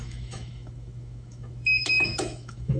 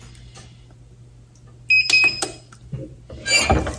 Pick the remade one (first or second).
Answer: first